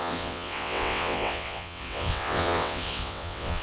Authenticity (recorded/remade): remade